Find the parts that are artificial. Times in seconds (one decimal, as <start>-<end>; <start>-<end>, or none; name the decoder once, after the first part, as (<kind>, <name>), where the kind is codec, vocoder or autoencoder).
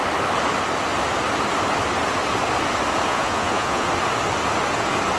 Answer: 3.1-3.9 (vocoder, Vocos)